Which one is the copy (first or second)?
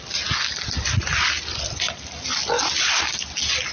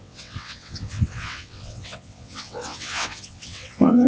second